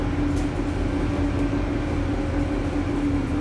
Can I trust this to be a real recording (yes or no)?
yes